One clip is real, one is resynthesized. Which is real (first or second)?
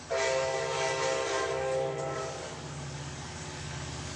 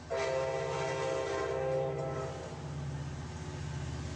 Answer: second